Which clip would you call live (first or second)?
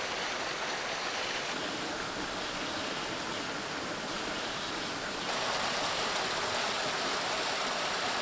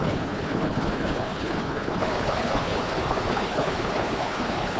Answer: first